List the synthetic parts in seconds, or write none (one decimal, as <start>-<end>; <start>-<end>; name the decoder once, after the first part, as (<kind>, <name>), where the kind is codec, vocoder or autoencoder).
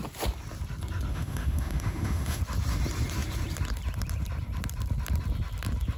1.1-2.4 (autoencoder, DAC-VAE)